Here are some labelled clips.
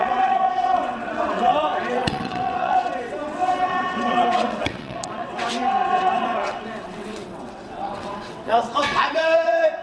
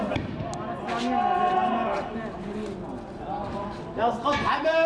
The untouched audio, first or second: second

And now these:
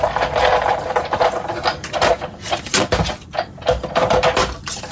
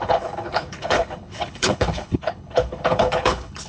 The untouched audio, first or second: first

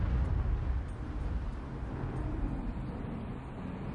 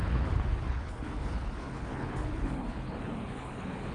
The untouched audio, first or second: first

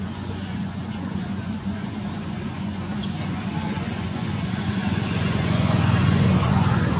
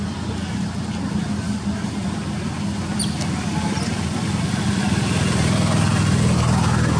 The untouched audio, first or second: second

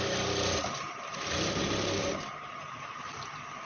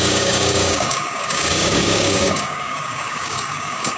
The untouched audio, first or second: first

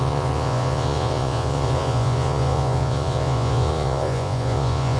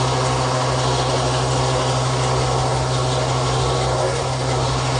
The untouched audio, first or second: second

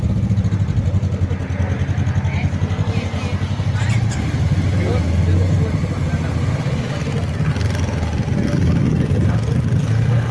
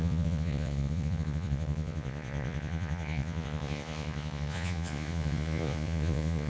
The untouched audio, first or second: first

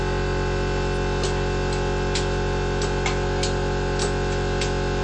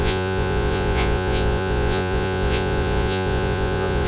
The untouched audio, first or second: first